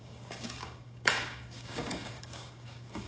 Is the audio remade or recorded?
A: remade